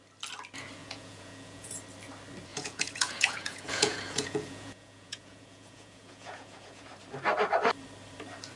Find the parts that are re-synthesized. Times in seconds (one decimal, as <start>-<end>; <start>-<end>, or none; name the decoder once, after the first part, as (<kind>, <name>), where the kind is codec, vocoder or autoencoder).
0.8-1.7 (vocoder, Vocos); 2.5-6.9